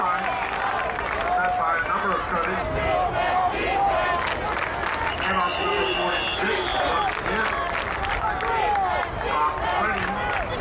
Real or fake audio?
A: real